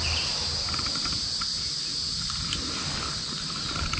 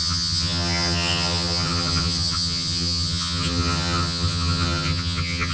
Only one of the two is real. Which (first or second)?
first